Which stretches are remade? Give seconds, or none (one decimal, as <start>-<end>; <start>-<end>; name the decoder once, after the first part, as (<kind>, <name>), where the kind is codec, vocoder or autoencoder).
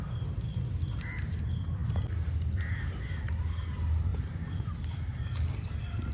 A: 4.1-6.1 (vocoder, BigVGAN v2)